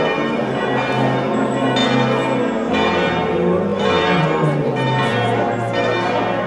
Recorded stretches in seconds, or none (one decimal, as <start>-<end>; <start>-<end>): 0.0-6.5